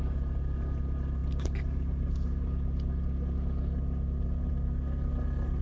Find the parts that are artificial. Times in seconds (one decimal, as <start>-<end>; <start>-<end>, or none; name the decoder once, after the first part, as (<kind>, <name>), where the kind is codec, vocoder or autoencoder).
none